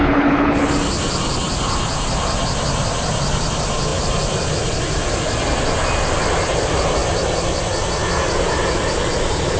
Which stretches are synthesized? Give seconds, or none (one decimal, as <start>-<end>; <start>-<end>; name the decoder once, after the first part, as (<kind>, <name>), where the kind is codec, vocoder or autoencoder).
0.0-0.7 (codec, HILCodec)